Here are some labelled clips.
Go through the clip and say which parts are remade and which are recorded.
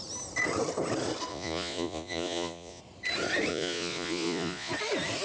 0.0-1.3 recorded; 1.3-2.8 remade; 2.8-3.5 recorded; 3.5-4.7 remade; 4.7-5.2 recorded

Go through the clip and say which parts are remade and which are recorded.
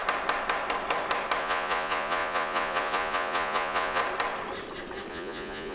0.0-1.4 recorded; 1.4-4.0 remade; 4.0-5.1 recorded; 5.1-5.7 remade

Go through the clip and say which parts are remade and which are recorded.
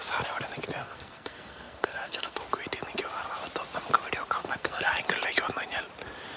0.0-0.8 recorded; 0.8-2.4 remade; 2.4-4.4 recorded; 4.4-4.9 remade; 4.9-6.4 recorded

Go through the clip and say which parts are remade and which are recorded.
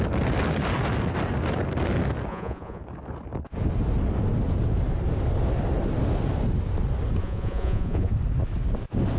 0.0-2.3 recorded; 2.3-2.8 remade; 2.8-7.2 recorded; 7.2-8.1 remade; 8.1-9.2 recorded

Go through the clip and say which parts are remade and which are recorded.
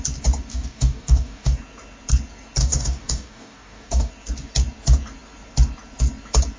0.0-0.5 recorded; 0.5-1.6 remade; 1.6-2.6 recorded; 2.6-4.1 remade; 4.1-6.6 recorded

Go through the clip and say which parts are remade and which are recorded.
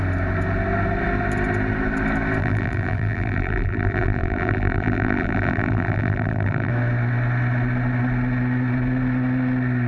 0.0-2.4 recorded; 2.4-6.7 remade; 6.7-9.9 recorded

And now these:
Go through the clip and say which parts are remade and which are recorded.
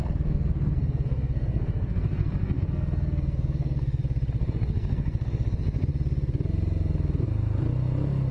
0.0-4.0 remade; 4.0-4.4 recorded; 4.4-5.5 remade; 5.5-8.3 recorded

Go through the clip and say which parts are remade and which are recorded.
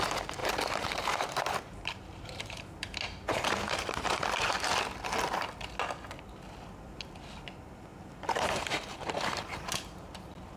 0.0-0.4 recorded; 0.4-4.2 remade; 4.2-7.9 recorded; 7.9-10.6 remade